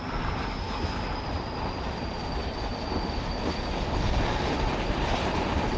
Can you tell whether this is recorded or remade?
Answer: recorded